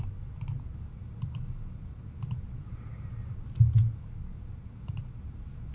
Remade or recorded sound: recorded